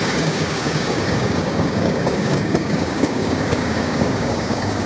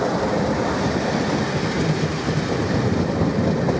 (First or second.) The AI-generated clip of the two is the first